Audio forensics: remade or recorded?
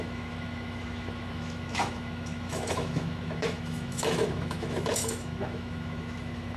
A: remade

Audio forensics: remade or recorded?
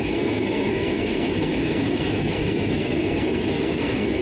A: remade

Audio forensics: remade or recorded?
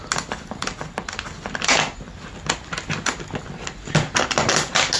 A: recorded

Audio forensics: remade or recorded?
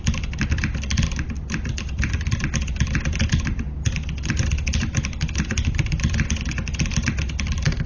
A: recorded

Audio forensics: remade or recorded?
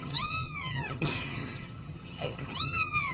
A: remade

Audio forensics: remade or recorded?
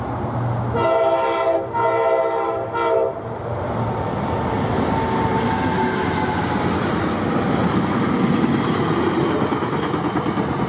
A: recorded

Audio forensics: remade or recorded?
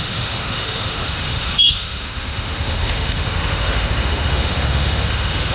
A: remade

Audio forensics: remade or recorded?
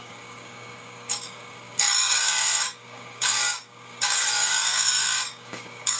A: remade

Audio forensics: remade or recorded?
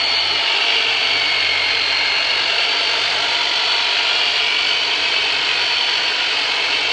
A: recorded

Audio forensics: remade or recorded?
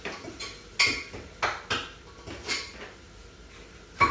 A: recorded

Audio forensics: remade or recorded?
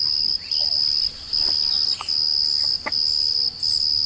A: recorded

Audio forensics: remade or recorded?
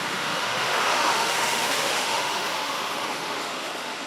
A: remade